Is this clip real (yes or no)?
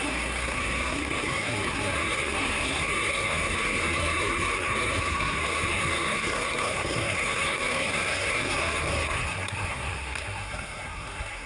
no